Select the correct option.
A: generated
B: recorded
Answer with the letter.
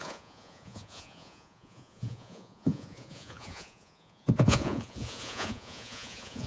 A